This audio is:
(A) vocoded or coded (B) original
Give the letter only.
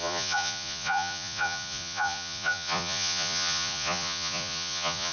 A